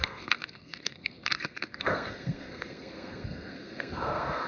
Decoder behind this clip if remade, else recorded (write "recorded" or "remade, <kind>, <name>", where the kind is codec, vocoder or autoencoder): remade, codec, SNAC